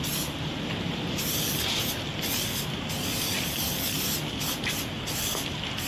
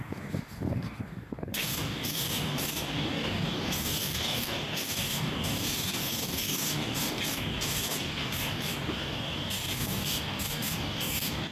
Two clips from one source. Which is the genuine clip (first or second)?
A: first